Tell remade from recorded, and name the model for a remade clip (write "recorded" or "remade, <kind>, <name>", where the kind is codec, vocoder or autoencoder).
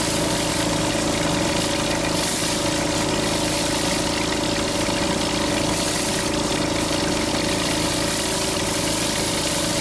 recorded